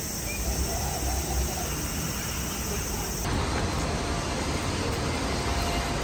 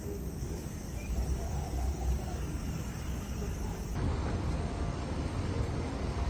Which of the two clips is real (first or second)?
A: first